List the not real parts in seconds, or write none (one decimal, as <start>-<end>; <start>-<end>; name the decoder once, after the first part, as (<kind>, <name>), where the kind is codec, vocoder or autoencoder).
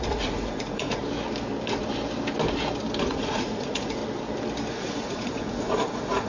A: 0.0-1.0 (vocoder, Vocos); 3.1-4.0; 4.7-6.3